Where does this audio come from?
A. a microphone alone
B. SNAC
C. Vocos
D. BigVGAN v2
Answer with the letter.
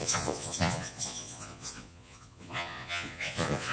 C